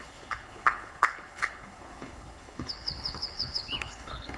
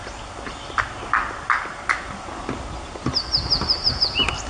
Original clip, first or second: second